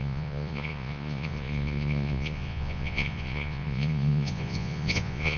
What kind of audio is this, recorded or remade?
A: remade